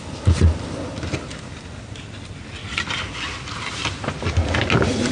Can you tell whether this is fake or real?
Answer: real